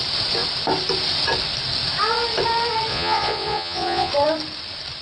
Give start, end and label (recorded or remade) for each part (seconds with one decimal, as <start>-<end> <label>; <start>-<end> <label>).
0.0-2.9 recorded; 2.9-4.1 remade; 4.1-5.0 recorded